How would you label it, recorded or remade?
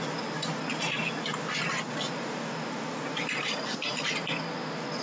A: recorded